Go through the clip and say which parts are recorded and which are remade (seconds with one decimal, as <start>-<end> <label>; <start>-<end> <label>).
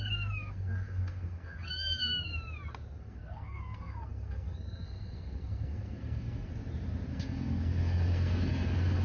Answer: 0.0-2.3 remade; 2.3-3.0 recorded; 3.0-6.5 remade; 6.5-7.1 recorded; 7.1-9.0 remade